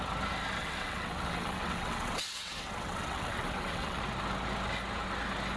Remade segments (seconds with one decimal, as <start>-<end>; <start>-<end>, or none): 0.6-4.0